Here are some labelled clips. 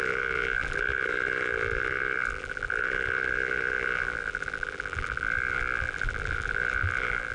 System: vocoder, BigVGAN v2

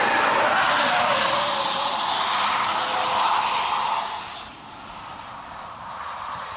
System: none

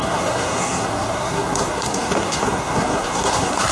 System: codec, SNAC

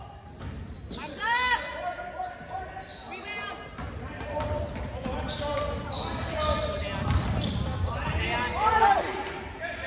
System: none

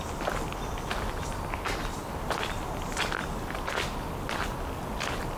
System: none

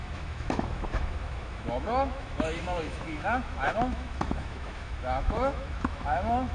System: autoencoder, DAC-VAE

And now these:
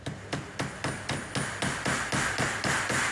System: none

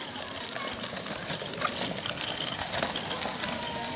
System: none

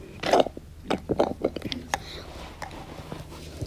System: none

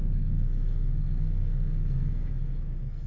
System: codec, SNAC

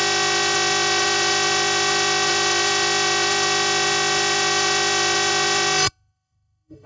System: autoencoder, DAC-VAE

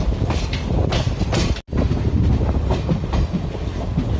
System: none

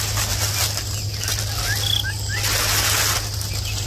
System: none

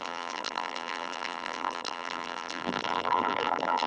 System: vocoder, BigVGAN v2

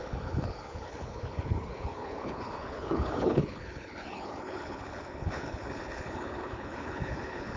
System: codec, HILCodec